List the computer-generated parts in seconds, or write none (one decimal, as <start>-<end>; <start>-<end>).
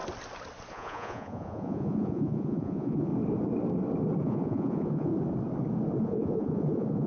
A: 0.7-3.1; 4.2-5.1; 6.0-7.1